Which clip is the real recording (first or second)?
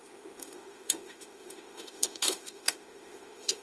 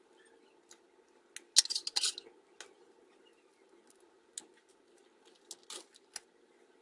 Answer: second